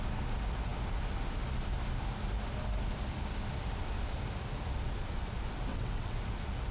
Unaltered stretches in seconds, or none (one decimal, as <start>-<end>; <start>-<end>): 0.0-5.7; 6.2-6.7